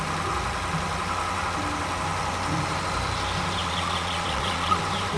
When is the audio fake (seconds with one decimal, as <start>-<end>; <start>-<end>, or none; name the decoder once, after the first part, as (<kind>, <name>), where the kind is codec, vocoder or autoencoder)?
3.6-4.8 (vocoder, Vocos)